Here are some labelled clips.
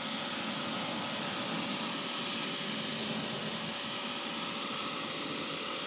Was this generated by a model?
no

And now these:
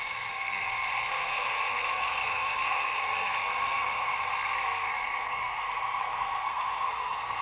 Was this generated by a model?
yes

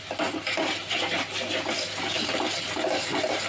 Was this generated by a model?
no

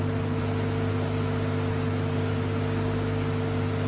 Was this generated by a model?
no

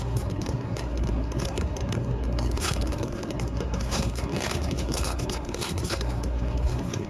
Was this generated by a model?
yes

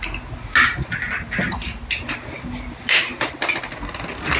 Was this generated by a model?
no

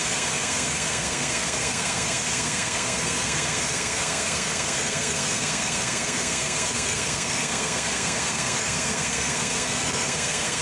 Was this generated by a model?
yes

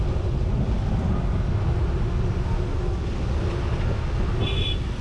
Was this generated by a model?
no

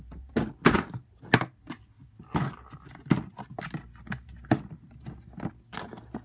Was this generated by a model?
no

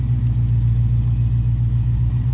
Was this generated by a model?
no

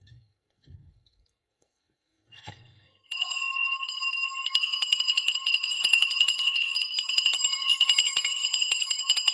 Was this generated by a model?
yes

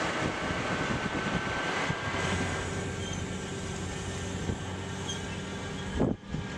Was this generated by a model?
no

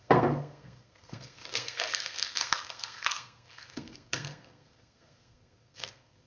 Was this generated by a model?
yes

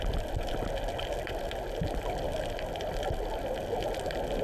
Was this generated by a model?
no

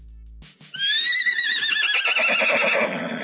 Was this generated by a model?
no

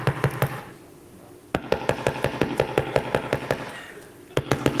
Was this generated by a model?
no